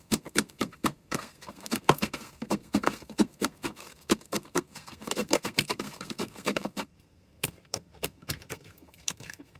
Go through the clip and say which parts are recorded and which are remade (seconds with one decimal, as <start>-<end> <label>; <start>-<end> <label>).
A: 0.0-9.6 remade